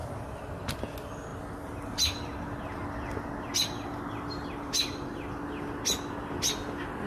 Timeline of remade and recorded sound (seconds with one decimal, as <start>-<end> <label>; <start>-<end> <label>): 0.0-7.1 recorded